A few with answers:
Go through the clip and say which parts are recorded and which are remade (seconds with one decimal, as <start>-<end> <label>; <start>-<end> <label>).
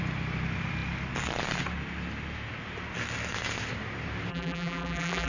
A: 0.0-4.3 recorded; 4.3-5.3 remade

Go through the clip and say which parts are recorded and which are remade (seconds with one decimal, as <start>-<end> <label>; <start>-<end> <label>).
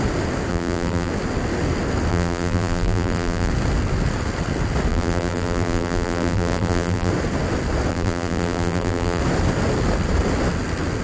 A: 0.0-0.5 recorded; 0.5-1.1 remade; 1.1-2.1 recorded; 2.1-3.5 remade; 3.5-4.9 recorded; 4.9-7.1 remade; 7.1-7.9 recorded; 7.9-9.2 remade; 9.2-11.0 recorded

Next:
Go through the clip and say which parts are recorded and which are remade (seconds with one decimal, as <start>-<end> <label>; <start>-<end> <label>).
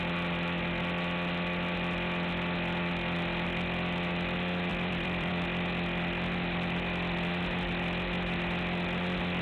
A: 0.0-4.7 recorded; 4.7-5.3 remade; 5.3-9.4 recorded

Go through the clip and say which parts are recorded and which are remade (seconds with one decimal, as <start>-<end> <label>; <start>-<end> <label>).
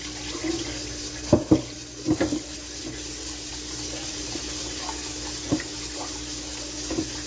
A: 0.0-0.4 recorded; 0.4-2.8 remade; 2.8-3.5 recorded; 3.5-4.4 remade; 4.4-7.3 recorded